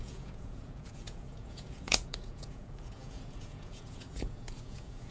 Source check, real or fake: fake